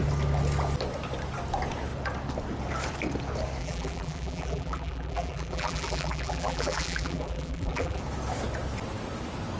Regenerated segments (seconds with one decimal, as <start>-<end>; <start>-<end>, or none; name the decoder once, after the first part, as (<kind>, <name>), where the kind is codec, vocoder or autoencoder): 3.6-8.0 (vocoder, BigVGAN v2)